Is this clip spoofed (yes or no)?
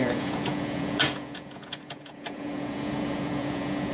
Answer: yes